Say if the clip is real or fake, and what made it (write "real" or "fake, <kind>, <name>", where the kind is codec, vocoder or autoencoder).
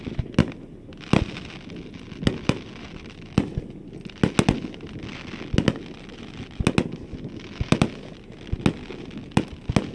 real